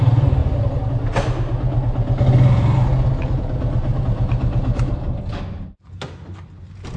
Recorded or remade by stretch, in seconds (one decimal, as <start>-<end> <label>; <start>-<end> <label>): 0.0-7.0 recorded